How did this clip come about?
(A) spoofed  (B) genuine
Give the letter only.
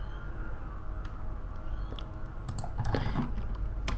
B